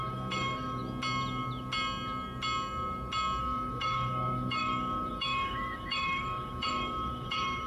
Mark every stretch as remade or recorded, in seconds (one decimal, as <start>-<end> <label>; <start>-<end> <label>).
0.0-0.8 remade; 0.8-3.4 recorded; 3.4-7.7 remade